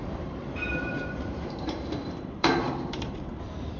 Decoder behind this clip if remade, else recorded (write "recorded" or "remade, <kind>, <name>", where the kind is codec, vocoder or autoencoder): remade, vocoder, BigVGAN v2